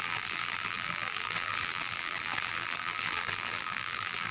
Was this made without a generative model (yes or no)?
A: no